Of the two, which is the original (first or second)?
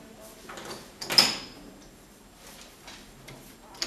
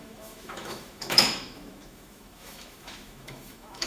first